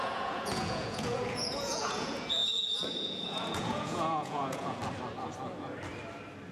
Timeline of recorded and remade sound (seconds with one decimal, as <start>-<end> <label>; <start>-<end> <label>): 0.0-4.8 remade; 4.8-6.5 recorded